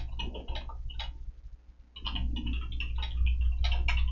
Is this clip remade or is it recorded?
recorded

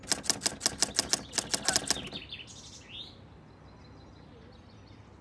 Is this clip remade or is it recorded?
recorded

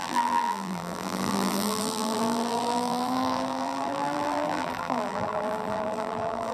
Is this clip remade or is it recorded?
remade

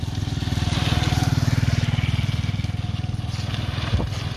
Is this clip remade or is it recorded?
recorded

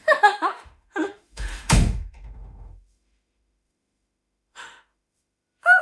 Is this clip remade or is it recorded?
remade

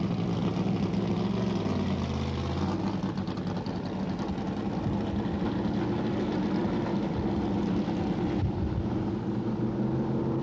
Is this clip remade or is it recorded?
recorded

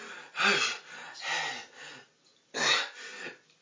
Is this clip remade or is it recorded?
recorded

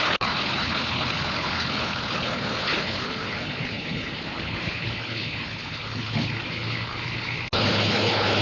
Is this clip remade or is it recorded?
remade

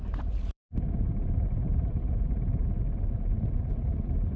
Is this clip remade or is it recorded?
remade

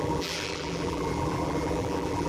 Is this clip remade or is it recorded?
remade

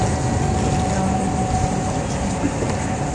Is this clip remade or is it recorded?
recorded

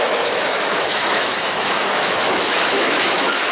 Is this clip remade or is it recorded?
remade